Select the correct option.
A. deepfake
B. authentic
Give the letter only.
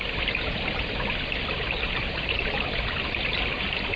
A